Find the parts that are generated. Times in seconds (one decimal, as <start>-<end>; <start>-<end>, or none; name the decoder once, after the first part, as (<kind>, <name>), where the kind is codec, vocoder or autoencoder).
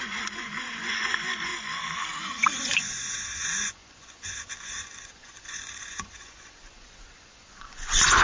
0.0-1.5 (vocoder, Vocos); 2.2-8.2